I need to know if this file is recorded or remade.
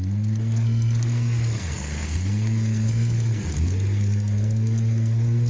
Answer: remade